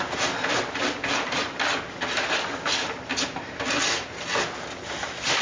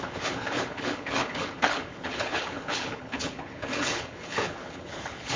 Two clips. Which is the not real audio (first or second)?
second